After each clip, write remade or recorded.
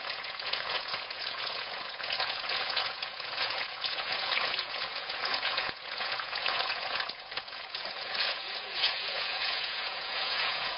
remade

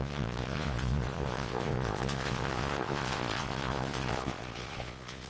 remade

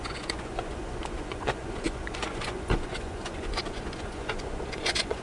remade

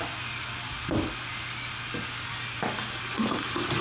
recorded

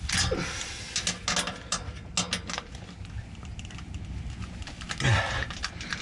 recorded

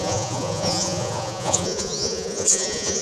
remade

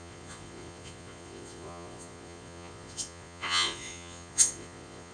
remade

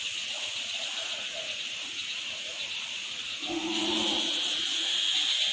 remade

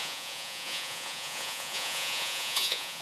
remade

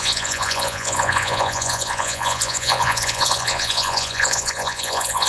remade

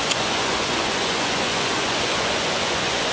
remade